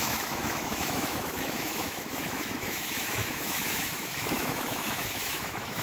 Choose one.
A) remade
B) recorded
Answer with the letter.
A